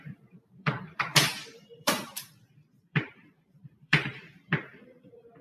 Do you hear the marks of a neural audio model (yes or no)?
yes